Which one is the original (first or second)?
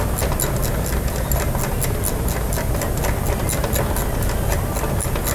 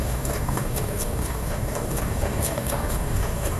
first